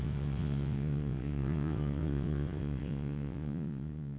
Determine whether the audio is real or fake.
fake